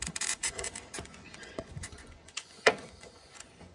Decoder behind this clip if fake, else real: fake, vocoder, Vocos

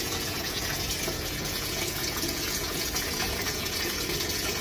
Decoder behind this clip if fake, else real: fake, vocoder, Vocos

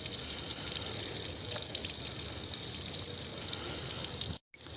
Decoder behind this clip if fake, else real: real